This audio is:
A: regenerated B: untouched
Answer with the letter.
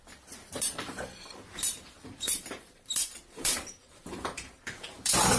A